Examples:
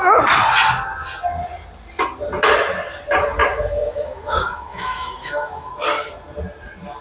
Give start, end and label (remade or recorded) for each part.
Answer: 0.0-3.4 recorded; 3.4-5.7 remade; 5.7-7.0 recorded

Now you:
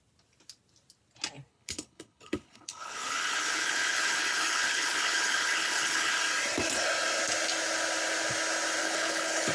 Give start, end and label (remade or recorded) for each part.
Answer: 0.0-1.5 recorded; 1.5-6.2 remade; 6.2-8.8 recorded; 8.8-9.5 remade